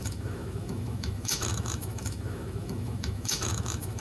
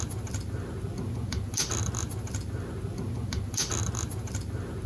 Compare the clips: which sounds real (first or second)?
second